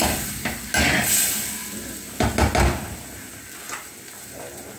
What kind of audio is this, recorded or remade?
recorded